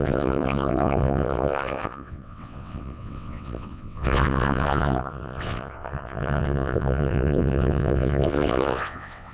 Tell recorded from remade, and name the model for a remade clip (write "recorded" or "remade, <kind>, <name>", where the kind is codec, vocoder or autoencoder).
remade, vocoder, WaveNeXt